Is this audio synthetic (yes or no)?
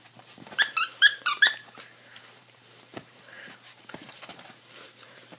yes